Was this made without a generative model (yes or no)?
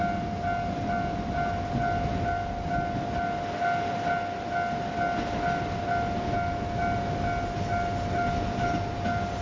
yes